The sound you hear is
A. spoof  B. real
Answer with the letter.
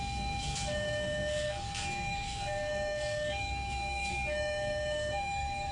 A